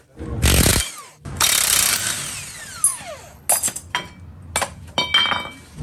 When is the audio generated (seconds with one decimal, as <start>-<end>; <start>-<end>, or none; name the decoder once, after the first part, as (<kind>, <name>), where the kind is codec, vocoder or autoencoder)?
none

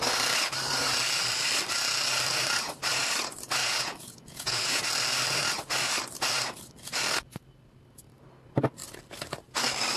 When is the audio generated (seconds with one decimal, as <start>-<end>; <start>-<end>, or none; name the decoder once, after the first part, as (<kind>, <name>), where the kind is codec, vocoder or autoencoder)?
3.6-4.8 (vocoder, Vocos)

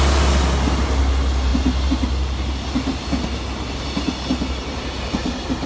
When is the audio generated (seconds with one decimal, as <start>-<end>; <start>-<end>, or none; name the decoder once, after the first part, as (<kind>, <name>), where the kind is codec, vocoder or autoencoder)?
none

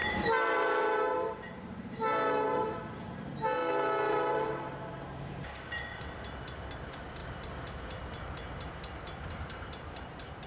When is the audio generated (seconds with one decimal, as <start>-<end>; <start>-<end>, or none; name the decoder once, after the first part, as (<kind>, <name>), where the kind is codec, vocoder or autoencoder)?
0.0-3.6 (vocoder, BigVGAN v2); 4.3-7.2; 9.3-10.5

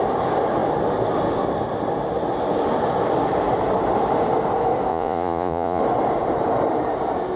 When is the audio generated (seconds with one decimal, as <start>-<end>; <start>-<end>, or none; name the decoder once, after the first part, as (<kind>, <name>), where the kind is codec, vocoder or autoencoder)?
4.9-5.8 (vocoder, Vocos)

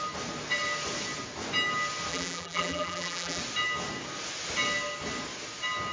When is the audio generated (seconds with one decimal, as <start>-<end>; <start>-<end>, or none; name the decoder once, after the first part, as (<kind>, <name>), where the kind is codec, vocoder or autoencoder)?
2.1-3.4 (vocoder, BigVGAN v2)

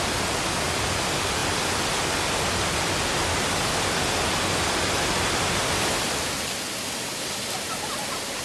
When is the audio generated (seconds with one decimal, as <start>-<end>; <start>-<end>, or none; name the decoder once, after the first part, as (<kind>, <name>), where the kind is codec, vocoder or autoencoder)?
none

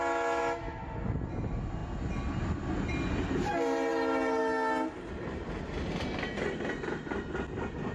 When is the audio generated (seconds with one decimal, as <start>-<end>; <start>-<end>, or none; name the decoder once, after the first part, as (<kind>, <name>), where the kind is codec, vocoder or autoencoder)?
none